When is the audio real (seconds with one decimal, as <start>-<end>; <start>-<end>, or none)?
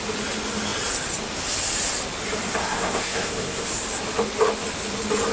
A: 0.0-2.6; 3.7-5.3